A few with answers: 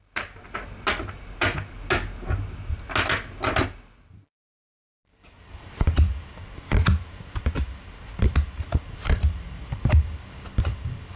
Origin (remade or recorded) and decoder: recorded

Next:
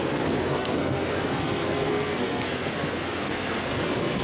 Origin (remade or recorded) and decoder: remade, codec, SNAC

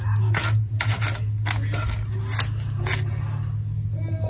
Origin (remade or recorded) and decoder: recorded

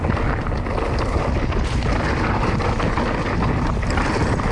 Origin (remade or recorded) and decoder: recorded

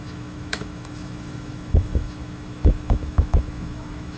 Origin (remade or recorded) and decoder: remade, autoencoder, DAC-VAE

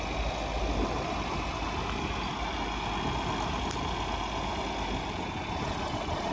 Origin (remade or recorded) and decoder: recorded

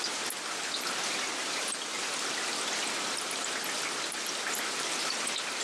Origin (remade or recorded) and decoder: recorded